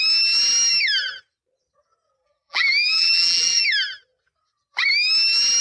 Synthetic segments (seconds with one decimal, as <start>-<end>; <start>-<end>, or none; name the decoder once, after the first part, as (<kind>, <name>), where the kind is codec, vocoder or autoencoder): 2.2-3.6 (vocoder, BigVGAN v2)